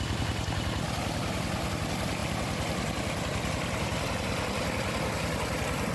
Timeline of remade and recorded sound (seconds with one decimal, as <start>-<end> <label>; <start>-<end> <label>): 0.0-5.9 recorded